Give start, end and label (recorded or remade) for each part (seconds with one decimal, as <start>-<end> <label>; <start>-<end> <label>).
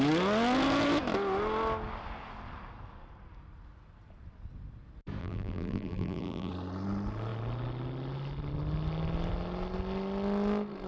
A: 0.0-5.2 recorded; 5.2-6.5 remade; 6.5-10.9 recorded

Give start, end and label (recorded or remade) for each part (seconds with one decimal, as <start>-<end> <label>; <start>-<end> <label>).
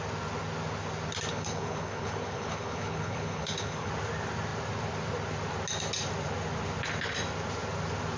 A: 0.0-1.3 recorded; 1.3-3.9 remade; 3.9-8.2 recorded